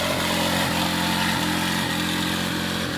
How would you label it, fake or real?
real